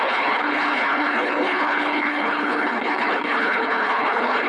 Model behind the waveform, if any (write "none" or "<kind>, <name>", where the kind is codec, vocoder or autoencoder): codec, HILCodec